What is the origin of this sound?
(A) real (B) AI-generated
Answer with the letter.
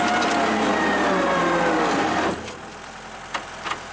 A